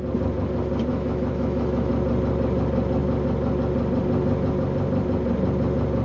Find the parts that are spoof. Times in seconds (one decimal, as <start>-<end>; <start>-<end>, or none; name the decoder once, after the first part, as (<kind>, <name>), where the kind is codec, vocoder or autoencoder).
0.9-1.9 (autoencoder, DAC-VAE)